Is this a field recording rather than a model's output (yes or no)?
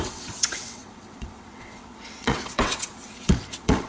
no